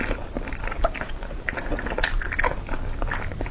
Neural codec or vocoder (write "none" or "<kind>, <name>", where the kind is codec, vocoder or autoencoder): none